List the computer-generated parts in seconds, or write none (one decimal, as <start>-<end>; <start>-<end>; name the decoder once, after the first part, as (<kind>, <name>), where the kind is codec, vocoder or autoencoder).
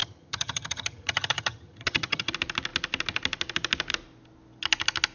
0.0-2.3 (vocoder, HiFi-GAN)